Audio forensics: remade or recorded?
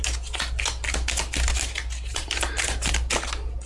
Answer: recorded